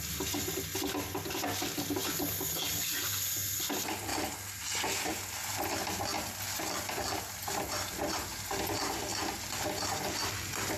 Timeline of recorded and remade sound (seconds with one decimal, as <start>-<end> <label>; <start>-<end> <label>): 0.0-9.1 recorded; 9.1-10.8 remade